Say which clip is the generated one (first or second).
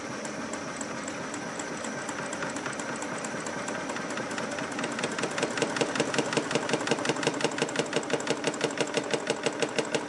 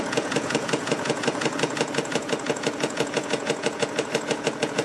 second